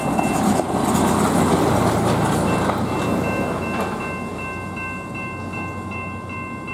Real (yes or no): yes